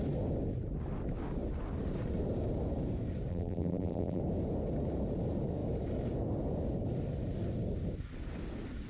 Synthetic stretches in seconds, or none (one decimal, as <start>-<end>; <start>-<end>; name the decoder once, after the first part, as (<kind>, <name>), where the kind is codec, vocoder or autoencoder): 3.3-4.2 (vocoder, BigVGAN v2)